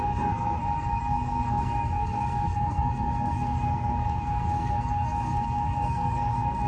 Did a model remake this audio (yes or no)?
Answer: yes